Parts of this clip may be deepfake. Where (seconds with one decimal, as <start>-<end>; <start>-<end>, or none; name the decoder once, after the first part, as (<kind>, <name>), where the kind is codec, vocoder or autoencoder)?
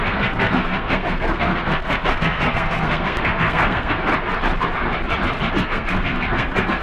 0.0-4.1 (codec, SNAC); 5.5-6.8